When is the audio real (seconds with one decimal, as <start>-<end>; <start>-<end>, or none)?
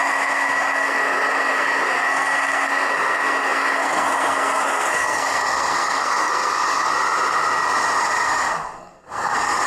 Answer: 6.9-8.0